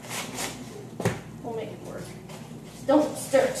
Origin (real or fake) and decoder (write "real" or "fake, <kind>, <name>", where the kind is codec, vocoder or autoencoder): fake, vocoder, BigVGAN v2